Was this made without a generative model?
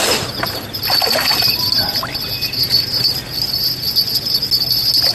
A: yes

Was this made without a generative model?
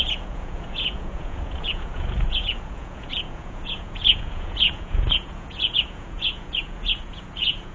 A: no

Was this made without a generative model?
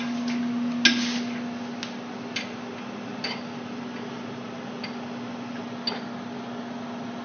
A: yes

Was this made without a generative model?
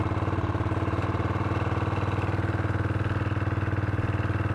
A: yes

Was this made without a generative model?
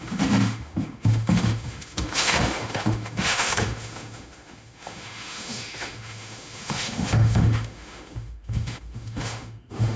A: no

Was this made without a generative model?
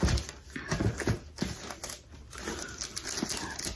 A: yes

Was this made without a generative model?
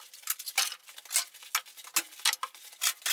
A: yes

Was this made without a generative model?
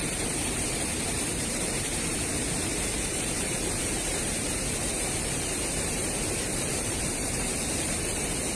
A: no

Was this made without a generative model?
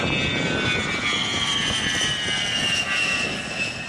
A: yes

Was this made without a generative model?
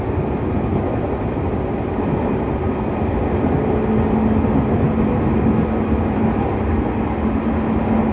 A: yes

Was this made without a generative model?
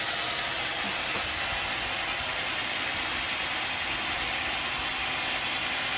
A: yes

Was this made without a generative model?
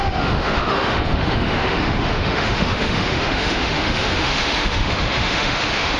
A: no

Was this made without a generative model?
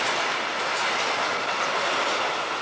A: yes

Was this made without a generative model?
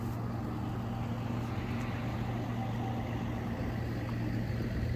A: yes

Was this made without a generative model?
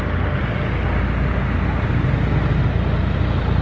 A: yes